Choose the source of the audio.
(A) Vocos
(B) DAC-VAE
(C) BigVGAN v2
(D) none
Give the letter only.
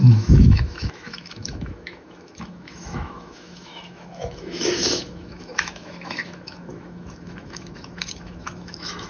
B